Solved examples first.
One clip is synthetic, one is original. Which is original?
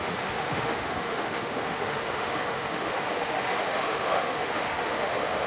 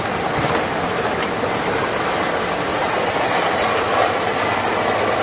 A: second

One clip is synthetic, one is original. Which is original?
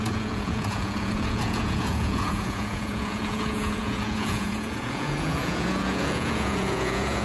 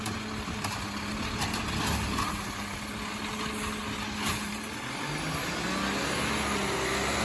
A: second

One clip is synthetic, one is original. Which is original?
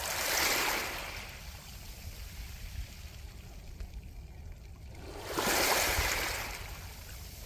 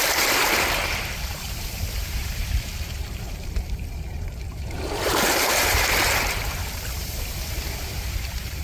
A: first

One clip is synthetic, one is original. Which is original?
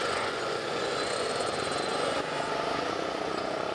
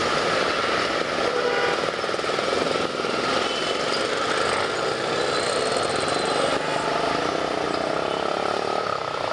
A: second